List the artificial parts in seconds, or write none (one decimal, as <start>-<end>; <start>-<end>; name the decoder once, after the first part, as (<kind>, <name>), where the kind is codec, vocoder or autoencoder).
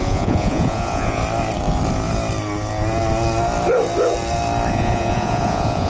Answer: 0.0-1.2 (vocoder, Vocos); 4.7-5.9